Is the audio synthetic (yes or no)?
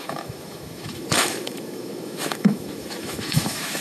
yes